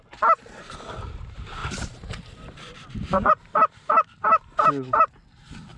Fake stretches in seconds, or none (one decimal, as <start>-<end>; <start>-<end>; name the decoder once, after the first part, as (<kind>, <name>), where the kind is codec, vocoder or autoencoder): 1.6-5.1 (vocoder, BigVGAN v2)